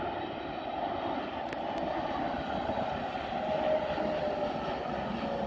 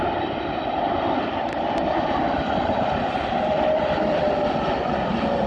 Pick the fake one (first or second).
second